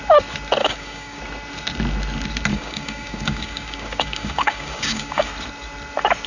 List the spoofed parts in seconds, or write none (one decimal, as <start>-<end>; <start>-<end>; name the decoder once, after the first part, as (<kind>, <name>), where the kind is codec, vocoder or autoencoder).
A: 0.6-1.2 (codec, DAC); 2.5-5.3